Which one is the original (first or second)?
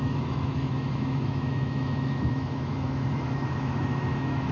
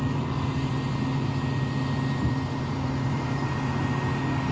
second